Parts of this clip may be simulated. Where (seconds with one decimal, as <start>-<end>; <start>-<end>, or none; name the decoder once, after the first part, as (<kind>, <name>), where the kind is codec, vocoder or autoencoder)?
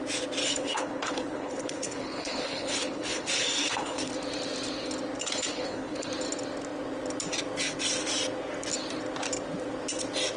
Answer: 0.4-4.1 (codec, HILCodec); 5.5-6.1